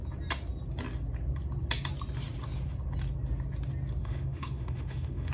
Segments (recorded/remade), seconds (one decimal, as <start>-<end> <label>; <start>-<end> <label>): 0.0-4.0 recorded; 4.0-5.3 remade